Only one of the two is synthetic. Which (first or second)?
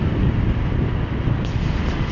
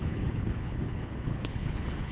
second